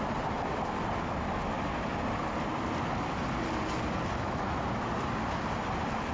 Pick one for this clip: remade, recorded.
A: recorded